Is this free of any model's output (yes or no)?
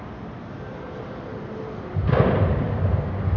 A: yes